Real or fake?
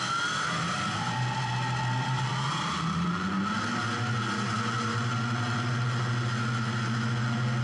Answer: real